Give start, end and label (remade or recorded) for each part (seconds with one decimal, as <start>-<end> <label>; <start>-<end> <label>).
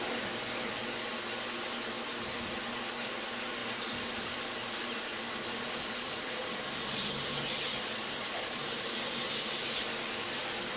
0.0-3.6 recorded; 3.6-8.7 remade; 8.7-10.8 recorded